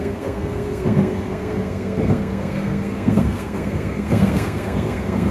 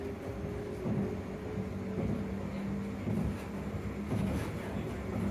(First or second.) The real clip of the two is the second